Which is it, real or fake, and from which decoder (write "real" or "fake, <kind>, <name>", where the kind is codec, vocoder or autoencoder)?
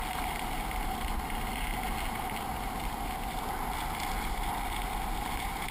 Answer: real